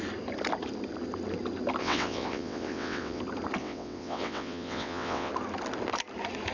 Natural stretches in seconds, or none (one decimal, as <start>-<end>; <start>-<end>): 0.0-1.8; 3.2-3.6; 5.3-6.5

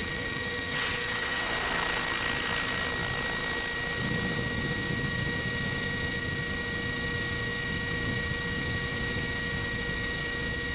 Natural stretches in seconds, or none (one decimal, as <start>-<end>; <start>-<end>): 1.5-10.7

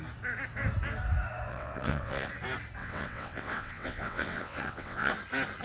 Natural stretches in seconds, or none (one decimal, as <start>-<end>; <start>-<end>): 0.0-1.5; 2.3-2.8; 5.1-5.6

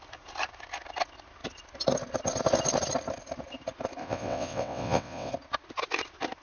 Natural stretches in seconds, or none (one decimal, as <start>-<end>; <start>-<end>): 0.0-4.0; 5.3-6.4